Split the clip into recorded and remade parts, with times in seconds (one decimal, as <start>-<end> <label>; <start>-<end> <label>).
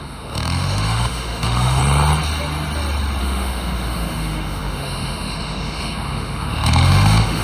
0.0-1.8 remade; 1.8-3.2 recorded; 3.2-7.4 remade